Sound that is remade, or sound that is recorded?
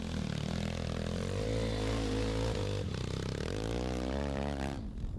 recorded